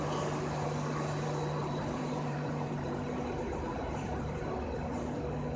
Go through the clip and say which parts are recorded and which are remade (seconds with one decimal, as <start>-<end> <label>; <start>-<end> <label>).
0.0-1.6 recorded; 1.6-4.4 remade; 4.4-5.6 recorded